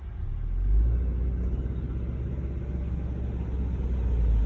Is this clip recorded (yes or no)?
yes